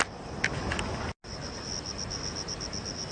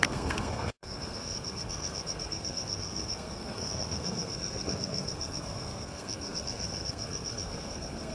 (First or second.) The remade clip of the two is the second